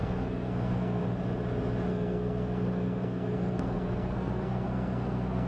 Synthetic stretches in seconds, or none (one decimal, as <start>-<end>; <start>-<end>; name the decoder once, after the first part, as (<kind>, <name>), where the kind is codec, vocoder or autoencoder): 0.0-1.0 (codec, SNAC); 1.9-5.5